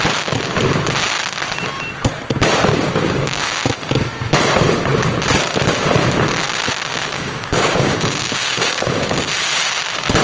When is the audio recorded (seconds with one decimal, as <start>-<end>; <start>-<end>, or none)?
0.0-2.7; 3.6-6.9; 9.3-10.2